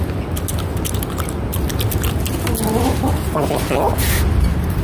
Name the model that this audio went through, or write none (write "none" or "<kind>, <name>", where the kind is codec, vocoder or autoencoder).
none